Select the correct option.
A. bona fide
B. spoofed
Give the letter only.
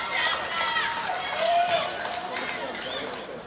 B